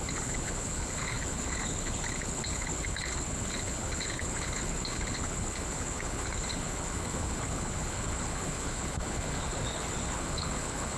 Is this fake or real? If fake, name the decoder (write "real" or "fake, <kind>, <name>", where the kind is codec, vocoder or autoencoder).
fake, codec, HILCodec